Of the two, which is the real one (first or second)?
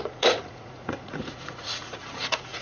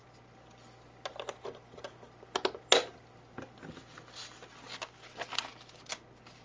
second